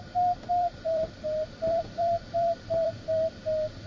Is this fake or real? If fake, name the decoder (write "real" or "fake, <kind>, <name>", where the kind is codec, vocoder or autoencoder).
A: fake, vocoder, BigVGAN v2